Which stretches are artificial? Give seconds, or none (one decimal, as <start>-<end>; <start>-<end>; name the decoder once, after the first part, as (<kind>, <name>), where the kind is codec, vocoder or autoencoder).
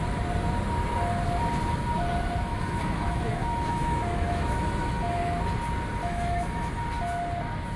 2.5-5.2 (autoencoder, DAC-VAE); 6.0-6.7